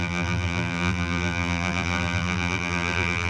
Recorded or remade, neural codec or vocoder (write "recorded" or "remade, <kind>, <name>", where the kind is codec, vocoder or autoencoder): remade, vocoder, BigVGAN v2